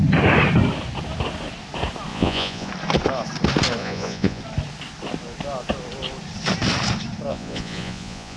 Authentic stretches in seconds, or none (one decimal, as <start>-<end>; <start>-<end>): 0.0-2.1; 2.7-3.8; 4.4-7.3